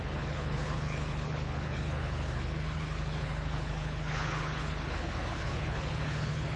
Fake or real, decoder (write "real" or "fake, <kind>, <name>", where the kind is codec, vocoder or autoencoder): fake, codec, HILCodec